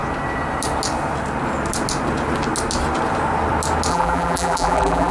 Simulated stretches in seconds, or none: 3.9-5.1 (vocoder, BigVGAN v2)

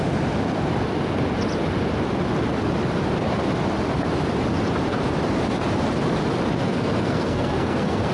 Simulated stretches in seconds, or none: 6.5-8.1 (codec, SNAC)

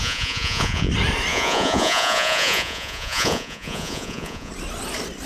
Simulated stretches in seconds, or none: 0.0-0.9 (vocoder, Vocos); 1.3-4.5

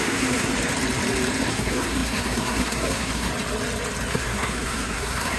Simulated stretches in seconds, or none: 0.0-0.5 (codec, SNAC); 1.5-3.3; 4.1-5.4

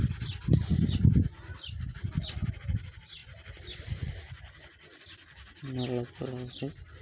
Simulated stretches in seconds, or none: none

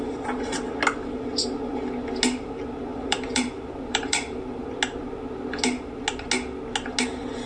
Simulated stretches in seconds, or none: 2.9-4.6 (vocoder, BigVGAN v2)

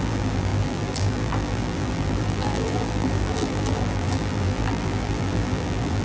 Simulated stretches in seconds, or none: 0.0-6.0 (vocoder, BigVGAN v2)

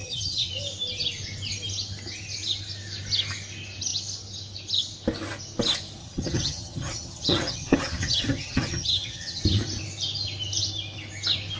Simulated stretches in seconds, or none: 0.0-0.5 (vocoder, HiFi-GAN); 6.0-9.4